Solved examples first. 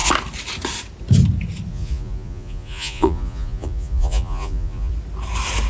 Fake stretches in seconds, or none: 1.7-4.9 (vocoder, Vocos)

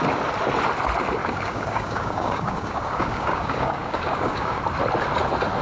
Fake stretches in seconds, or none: 1.2-4.6 (codec, DAC)

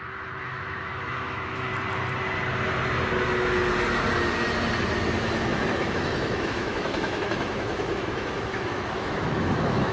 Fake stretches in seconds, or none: 0.0-1.7 (autoencoder, DAC-VAE); 5.0-9.9

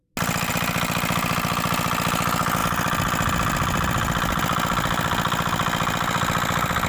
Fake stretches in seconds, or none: none

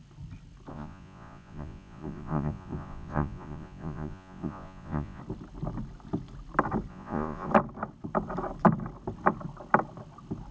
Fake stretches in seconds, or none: 0.7-5.2 (vocoder, Vocos); 6.9-7.5

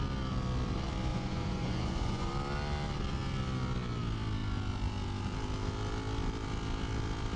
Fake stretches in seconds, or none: 1.1-2.3 (vocoder, Vocos)

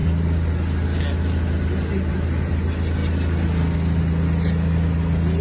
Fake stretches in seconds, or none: none